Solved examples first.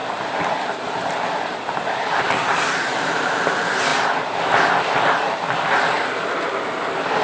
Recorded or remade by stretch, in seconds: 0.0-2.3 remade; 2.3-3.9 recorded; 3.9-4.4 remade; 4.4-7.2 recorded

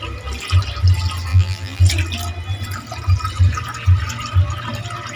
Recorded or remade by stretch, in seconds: 0.0-1.3 recorded; 1.3-1.8 remade; 1.8-5.2 recorded

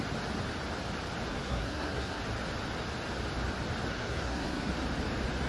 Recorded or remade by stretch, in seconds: 0.0-1.3 recorded; 1.3-2.2 remade; 2.2-3.9 recorded; 3.9-4.7 remade; 4.7-5.5 recorded

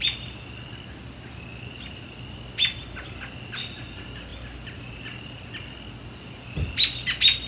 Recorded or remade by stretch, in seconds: 0.0-7.5 recorded

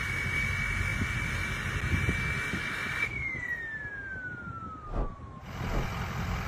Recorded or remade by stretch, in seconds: 0.0-6.5 recorded